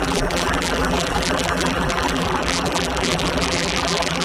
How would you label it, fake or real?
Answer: fake